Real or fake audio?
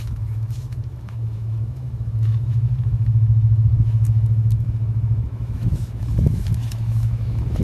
fake